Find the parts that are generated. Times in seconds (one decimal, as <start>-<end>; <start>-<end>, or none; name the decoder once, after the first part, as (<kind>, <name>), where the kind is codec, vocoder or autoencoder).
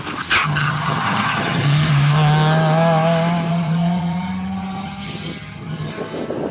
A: 0.4-1.9 (vocoder, HiFi-GAN); 3.5-5.9